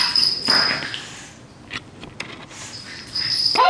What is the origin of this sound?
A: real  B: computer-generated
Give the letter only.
B